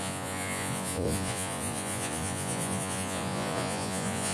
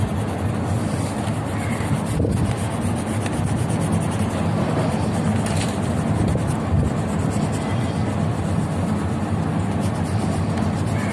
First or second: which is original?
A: second